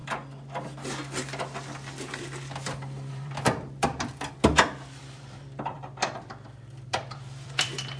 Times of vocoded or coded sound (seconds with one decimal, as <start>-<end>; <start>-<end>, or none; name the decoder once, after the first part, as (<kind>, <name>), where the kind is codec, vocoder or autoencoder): 3.1-3.9 (vocoder, BigVGAN v2); 5.0-8.0